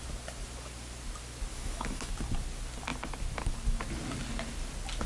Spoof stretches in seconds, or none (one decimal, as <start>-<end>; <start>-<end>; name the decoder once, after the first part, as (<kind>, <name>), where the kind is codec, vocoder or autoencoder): 1.5-2.1 (autoencoder, DAC-VAE)